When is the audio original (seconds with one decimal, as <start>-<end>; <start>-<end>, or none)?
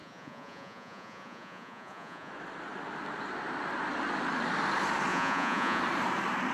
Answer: 2.3-5.1; 5.8-6.5